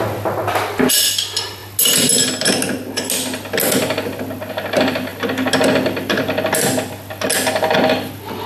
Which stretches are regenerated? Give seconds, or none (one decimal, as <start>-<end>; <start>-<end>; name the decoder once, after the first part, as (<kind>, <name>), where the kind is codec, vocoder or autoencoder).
none